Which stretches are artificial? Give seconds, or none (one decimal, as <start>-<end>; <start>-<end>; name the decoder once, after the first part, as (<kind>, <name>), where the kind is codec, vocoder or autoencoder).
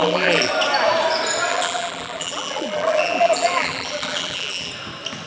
0.0-0.5 (vocoder, BigVGAN v2); 1.5-4.7